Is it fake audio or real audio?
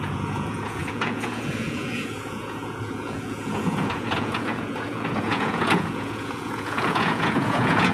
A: fake